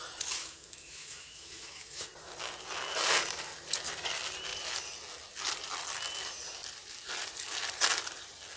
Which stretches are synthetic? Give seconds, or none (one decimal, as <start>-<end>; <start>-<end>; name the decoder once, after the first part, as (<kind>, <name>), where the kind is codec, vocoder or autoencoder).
0.4-2.1 (autoencoder, DAC-VAE)